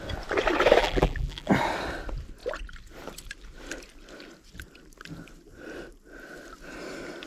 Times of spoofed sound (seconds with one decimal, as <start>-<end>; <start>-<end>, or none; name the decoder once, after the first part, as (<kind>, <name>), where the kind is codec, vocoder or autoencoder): 0.8-1.5 (vocoder, BigVGAN v2)